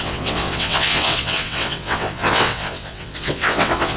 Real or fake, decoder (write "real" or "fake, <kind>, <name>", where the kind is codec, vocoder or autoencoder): fake, vocoder, WaveNeXt